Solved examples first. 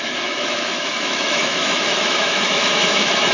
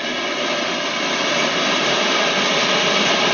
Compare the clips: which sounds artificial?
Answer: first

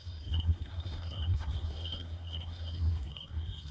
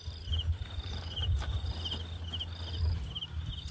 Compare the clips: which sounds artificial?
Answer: first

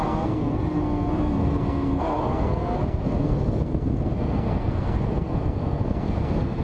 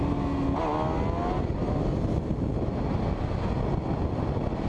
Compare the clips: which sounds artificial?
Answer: first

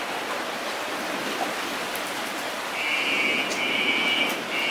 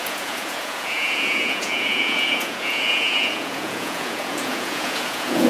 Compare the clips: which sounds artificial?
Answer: second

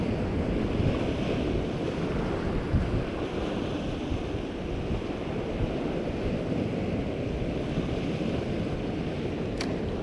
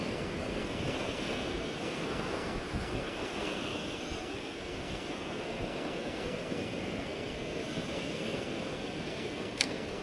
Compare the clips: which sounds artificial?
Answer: second